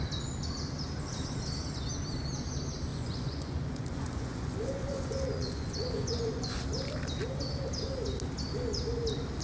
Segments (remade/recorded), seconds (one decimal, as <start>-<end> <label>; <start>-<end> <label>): 0.0-2.9 recorded; 2.9-6.6 remade; 6.6-9.4 recorded